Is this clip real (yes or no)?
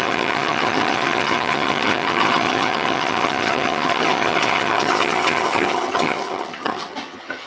no